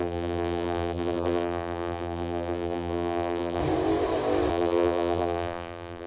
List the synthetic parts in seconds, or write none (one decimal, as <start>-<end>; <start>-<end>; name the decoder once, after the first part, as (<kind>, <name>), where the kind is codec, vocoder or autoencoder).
0.0-3.6 (vocoder, BigVGAN v2); 4.5-6.1